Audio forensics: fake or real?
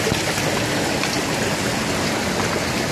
real